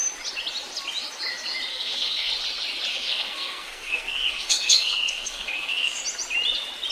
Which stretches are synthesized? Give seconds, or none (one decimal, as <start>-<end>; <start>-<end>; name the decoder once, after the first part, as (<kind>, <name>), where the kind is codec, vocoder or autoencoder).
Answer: 1.7-2.3 (codec, SNAC); 2.9-6.0